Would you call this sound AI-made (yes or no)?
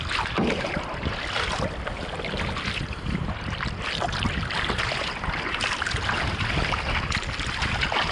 no